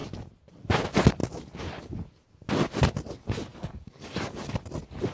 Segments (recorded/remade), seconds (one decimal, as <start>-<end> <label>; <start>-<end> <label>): 0.0-3.5 recorded; 3.5-4.4 remade; 4.4-5.1 recorded

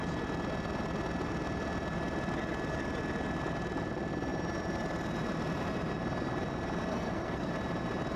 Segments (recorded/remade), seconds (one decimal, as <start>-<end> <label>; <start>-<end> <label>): 0.0-6.9 recorded; 6.9-7.5 remade; 7.5-8.2 recorded

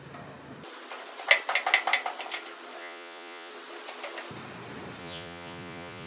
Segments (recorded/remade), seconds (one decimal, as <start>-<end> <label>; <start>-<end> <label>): 0.0-2.8 recorded; 2.8-3.5 remade; 3.5-5.0 recorded; 5.0-6.1 remade

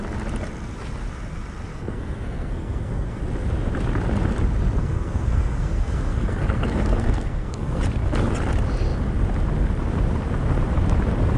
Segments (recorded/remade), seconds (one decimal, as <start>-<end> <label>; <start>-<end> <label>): 0.0-1.7 recorded; 1.7-3.2 remade; 3.2-4.8 recorded; 4.8-7.8 remade; 7.8-11.4 recorded

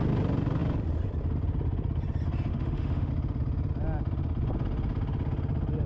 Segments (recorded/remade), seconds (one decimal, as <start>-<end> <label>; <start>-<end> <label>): 0.0-2.5 recorded; 2.5-3.1 remade; 3.1-5.9 recorded

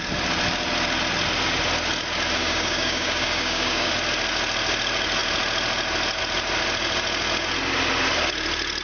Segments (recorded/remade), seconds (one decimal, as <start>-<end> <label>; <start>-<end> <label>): 0.0-2.4 recorded; 2.4-3.9 remade; 3.9-8.8 recorded

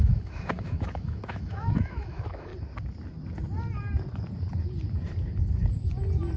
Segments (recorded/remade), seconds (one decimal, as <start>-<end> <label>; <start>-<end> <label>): 0.0-2.5 remade; 2.5-6.4 recorded